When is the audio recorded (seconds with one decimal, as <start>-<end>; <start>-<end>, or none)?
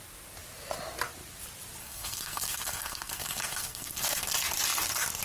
0.0-1.8; 4.3-5.2